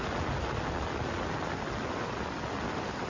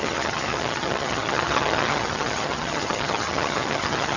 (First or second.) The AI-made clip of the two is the second